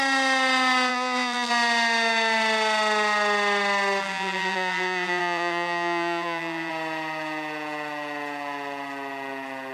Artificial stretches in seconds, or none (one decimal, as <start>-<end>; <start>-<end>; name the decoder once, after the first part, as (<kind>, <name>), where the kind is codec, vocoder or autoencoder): 0.9-1.5 (vocoder, BigVGAN v2); 4.0-6.7